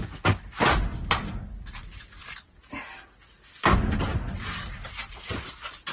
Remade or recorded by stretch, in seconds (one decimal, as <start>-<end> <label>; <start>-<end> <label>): 0.0-5.9 recorded